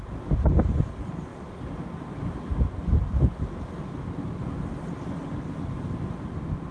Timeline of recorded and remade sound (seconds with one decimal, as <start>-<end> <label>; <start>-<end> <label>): 0.0-6.7 recorded